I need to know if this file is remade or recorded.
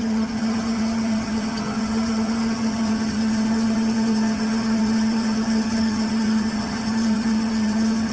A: remade